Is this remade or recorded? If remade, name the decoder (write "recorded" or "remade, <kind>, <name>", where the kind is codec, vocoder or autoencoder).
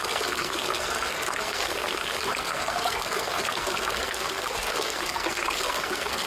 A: remade, codec, SNAC